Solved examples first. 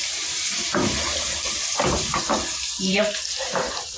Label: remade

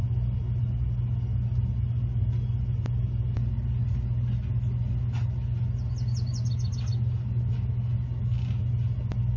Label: recorded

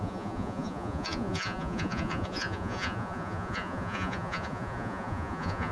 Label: remade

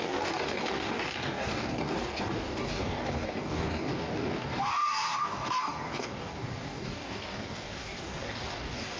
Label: remade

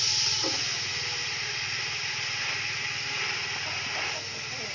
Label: recorded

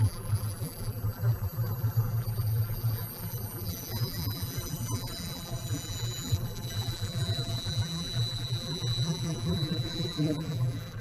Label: remade